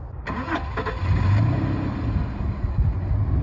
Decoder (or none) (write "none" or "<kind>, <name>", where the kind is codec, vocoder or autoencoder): none